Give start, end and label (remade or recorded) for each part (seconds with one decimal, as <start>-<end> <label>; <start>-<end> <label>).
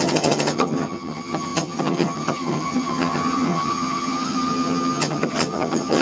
0.0-6.0 remade